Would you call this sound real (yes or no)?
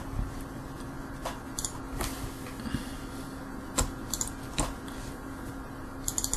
yes